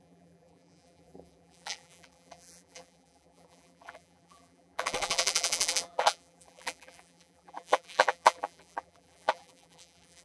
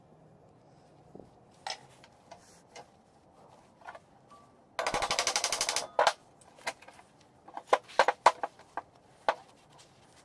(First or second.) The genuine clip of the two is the second